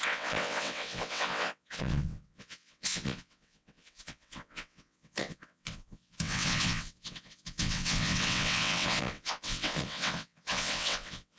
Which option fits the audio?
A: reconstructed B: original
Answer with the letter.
A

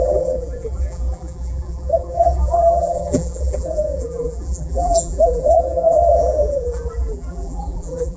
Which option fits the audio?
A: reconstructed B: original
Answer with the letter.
A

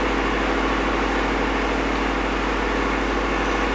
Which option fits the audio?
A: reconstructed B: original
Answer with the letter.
B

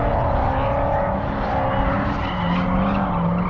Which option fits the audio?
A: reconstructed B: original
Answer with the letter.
B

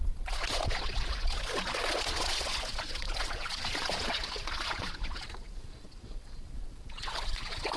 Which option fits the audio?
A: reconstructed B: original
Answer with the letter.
A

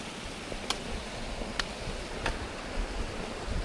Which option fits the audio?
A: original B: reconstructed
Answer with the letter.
A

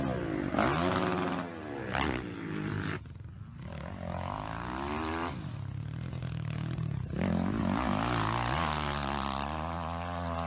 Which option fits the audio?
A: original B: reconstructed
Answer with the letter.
A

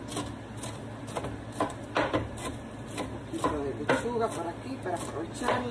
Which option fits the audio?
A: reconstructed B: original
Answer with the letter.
B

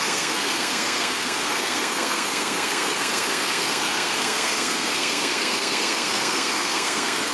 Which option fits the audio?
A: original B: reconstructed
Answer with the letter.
B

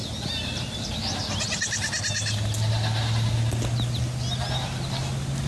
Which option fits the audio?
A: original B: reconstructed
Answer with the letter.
A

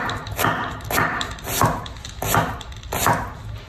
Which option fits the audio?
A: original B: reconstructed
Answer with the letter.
A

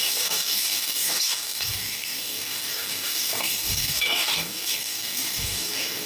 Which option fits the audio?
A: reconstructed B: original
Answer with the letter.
A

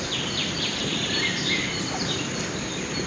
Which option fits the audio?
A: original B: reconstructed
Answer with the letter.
A